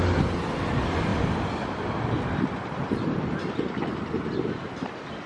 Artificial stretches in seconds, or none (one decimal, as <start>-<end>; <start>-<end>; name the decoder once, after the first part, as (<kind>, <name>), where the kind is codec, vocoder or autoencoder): 1.1-4.3 (vocoder, BigVGAN v2)

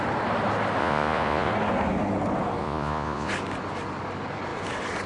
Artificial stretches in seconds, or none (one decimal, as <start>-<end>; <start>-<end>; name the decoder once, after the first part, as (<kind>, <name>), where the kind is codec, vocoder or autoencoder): 0.8-1.5 (vocoder, Vocos); 2.6-3.3

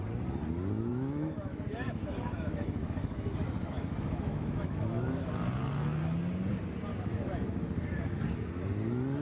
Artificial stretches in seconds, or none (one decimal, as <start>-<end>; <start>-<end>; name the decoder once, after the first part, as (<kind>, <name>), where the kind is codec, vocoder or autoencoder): 0.9-5.3 (autoencoder, DAC-VAE); 6.9-8.2